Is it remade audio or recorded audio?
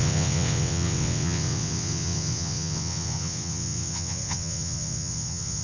remade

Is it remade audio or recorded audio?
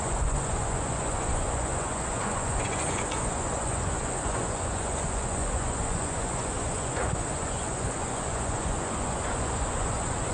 remade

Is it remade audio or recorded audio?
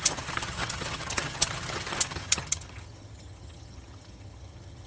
remade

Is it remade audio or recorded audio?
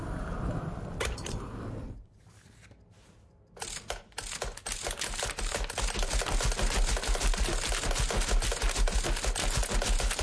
recorded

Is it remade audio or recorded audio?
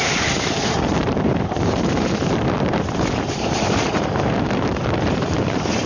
remade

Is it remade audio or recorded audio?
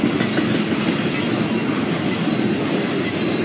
recorded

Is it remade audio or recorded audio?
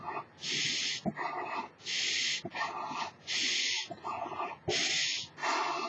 recorded